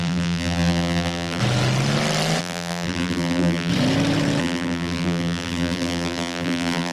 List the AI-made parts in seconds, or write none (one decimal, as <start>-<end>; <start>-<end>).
0.0-1.4; 2.4-3.7; 4.4-6.9